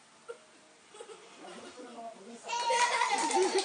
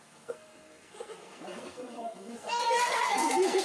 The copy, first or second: second